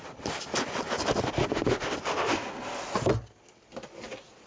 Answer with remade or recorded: recorded